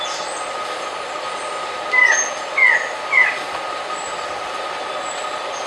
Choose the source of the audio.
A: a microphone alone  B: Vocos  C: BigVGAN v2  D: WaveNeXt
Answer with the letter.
A